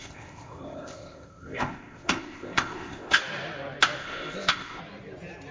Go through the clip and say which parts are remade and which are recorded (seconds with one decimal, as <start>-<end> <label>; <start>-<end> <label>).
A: 0.0-3.2 remade; 3.2-4.0 recorded; 4.0-4.8 remade; 4.8-5.5 recorded